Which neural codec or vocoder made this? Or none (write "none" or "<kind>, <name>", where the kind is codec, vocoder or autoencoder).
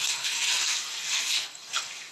codec, SNAC